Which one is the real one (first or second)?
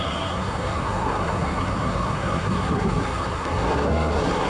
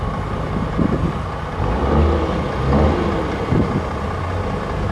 second